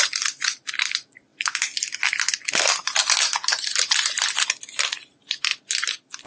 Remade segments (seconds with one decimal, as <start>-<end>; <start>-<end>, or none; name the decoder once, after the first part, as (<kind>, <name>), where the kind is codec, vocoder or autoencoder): none